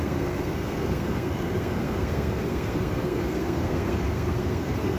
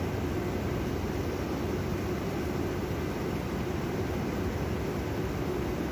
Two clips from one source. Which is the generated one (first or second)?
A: first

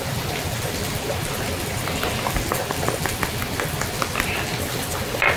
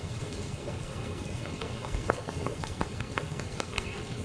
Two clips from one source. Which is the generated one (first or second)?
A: second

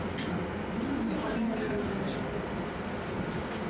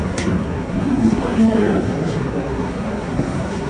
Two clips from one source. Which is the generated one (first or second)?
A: second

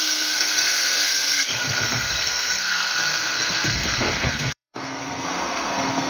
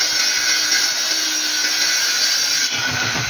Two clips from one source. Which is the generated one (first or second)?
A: first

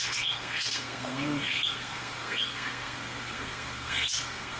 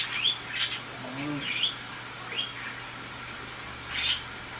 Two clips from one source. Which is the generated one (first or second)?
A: first